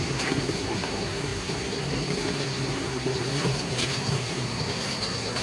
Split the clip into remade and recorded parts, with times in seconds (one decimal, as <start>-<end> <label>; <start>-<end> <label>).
0.0-5.4 remade